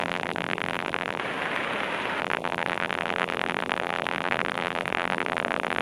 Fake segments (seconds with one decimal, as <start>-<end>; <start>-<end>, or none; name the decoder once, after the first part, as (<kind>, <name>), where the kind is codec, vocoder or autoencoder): 0.0-1.2 (vocoder, BigVGAN v2); 2.2-5.8